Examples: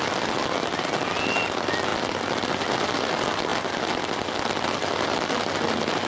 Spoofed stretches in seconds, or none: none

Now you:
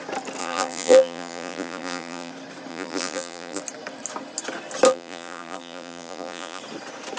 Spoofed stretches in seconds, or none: 0.4-2.3; 2.7-3.6; 4.9-6.6

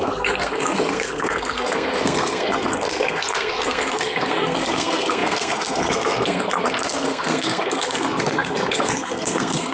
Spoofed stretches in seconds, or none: 0.0-9.7